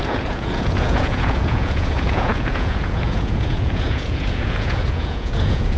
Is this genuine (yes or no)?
no